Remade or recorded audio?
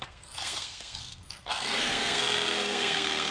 remade